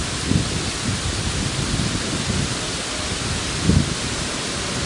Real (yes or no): yes